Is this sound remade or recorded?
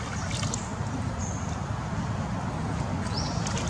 recorded